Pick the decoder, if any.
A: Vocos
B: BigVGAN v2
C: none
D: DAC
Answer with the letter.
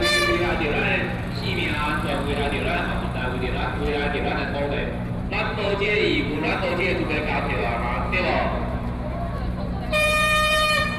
B